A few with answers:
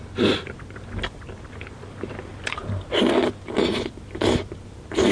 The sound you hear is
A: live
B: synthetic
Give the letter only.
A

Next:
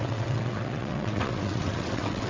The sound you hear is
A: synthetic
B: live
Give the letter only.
A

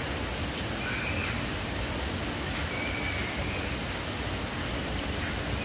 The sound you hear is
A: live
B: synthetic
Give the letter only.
A